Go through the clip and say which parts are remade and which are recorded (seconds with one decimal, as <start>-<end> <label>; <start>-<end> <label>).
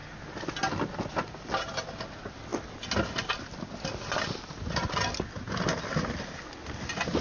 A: 0.0-7.2 recorded